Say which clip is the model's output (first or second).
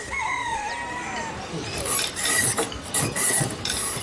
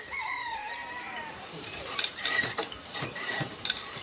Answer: second